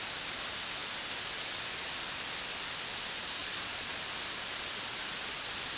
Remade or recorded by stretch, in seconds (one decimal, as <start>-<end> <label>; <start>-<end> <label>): 0.0-3.4 recorded; 3.4-4.0 remade; 4.0-5.8 recorded